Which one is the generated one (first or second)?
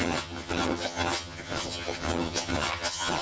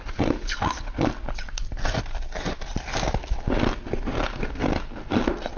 first